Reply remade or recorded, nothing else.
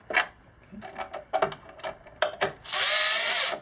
recorded